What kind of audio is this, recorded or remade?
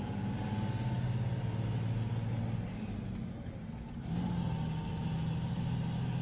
recorded